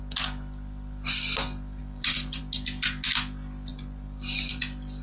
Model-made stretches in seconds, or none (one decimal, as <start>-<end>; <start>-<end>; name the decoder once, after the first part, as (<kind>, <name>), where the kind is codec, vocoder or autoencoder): 1.8-2.4 (vocoder, BigVGAN v2); 3.7-4.6